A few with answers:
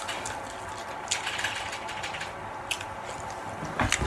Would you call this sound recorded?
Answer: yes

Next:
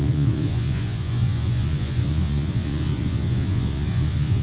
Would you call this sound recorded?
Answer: no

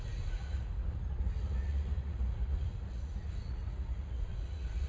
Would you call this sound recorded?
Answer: no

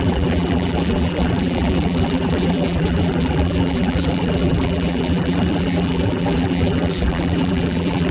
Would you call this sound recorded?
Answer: no